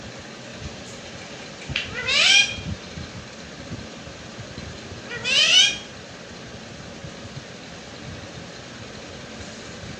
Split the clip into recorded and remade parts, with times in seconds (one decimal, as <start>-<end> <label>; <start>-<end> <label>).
0.0-0.5 recorded; 0.5-3.2 remade; 3.2-10.0 recorded